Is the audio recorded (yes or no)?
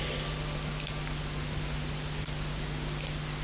yes